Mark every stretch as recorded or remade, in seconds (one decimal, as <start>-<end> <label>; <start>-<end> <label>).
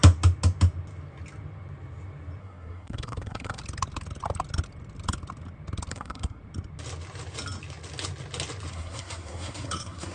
0.0-2.4 recorded; 2.4-3.6 remade; 3.6-5.9 recorded; 5.9-6.4 remade; 6.4-8.7 recorded; 8.7-10.1 remade